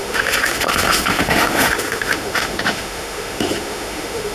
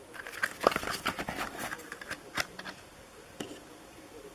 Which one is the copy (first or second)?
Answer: first